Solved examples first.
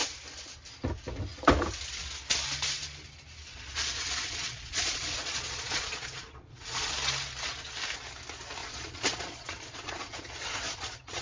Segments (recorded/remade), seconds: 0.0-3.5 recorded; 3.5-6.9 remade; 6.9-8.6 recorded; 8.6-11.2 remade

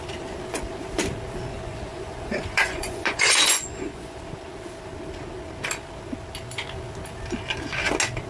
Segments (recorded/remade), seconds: 0.0-1.5 recorded; 1.5-4.2 remade; 4.2-8.3 recorded